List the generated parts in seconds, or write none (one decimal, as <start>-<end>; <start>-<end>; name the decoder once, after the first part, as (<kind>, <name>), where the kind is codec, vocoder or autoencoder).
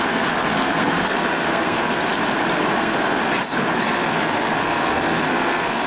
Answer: 0.0-2.0 (codec, SNAC); 2.8-3.2; 3.8-5.9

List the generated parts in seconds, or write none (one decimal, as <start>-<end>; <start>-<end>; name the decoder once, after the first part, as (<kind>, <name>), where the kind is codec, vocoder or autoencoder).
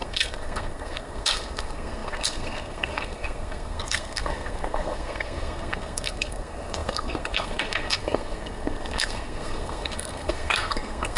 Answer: 0.0-11.2 (codec, SNAC)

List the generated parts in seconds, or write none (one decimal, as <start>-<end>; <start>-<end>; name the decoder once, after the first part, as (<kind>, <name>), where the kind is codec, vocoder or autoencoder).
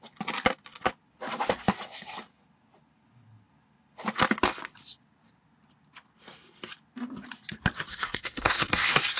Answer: 7.9-9.2 (codec, SNAC)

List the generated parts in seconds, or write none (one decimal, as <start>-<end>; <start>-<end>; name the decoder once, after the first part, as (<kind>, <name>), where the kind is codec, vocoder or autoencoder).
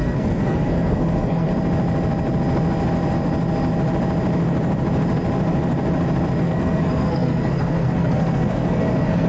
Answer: 0.0-1.5 (codec, SNAC); 6.4-9.3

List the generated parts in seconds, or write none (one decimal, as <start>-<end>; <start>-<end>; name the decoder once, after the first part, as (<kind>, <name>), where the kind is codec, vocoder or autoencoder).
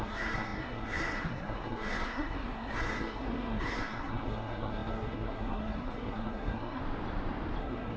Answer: 0.0-6.8 (codec, SNAC); 7.6-8.0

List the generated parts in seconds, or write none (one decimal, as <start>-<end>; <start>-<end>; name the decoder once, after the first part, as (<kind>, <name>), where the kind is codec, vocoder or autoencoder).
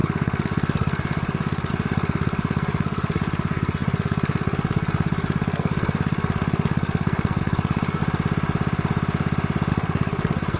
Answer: 0.0-8.0 (codec, SNAC); 9.7-10.6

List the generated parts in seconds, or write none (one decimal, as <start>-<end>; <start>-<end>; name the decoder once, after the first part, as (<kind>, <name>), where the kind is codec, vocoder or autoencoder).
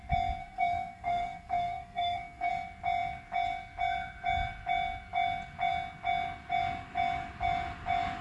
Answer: 0.4-2.5 (codec, SNAC)